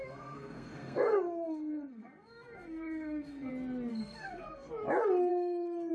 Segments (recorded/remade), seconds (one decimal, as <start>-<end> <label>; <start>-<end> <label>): 0.0-3.5 remade; 3.5-3.9 recorded; 3.9-4.7 remade; 4.7-5.3 recorded; 5.3-5.9 remade